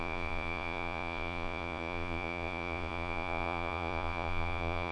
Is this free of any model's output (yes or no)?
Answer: no